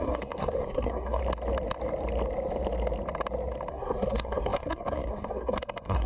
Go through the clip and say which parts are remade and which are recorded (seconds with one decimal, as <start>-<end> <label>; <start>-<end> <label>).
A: 0.0-1.2 remade; 1.2-3.7 recorded; 3.7-6.1 remade